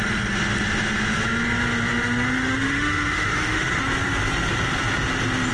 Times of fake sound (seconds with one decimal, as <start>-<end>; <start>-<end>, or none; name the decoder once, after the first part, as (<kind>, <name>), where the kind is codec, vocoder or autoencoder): 2.4-3.8 (autoencoder, DAC-VAE)